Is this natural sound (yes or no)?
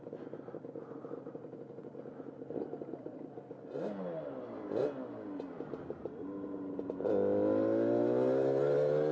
yes